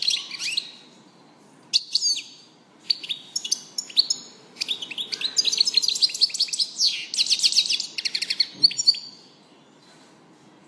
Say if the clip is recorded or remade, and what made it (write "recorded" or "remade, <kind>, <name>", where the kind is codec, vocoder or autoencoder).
recorded